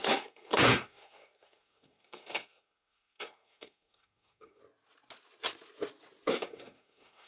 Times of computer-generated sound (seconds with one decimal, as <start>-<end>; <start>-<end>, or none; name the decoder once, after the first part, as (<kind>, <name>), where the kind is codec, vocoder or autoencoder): 0.0-4.6 (codec, SNAC); 6.3-7.3